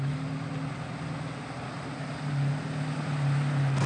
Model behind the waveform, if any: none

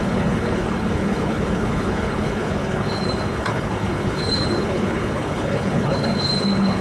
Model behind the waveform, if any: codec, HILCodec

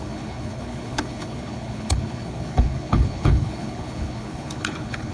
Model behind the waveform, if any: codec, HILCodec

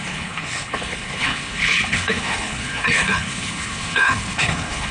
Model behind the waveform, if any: codec, HILCodec